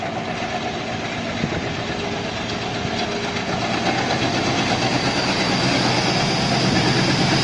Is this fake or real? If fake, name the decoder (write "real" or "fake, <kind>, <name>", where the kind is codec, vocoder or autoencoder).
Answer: real